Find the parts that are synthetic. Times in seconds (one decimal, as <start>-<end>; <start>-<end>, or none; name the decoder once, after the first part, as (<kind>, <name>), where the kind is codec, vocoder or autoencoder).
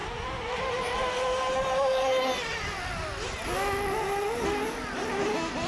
0.0-0.6 (vocoder, BigVGAN v2)